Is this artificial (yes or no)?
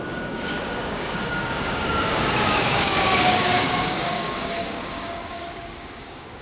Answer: yes